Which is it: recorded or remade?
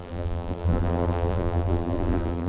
remade